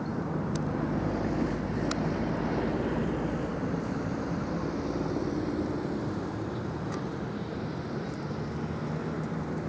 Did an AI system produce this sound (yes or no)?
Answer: no